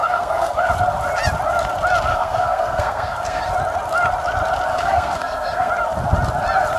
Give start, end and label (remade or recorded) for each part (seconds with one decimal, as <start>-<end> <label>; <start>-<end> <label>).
0.0-0.7 remade; 0.7-2.1 recorded; 2.1-3.4 remade; 3.4-4.7 recorded; 4.7-5.7 remade; 5.7-6.8 recorded